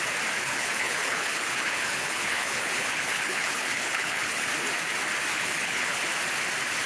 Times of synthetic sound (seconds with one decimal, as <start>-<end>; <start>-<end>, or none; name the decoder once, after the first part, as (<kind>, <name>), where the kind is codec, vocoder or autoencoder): 0.4-4.5 (codec, HILCodec); 5.3-6.0